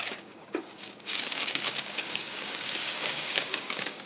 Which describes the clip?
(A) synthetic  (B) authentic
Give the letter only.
A